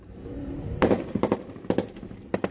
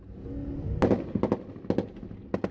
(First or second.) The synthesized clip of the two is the first